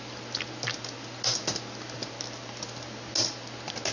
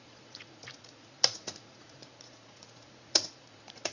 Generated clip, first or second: second